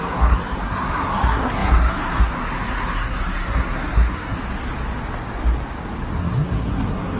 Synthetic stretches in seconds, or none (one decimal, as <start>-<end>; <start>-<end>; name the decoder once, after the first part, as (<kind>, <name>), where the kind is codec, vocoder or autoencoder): 0.0-4.4 (codec, SNAC); 6.2-7.2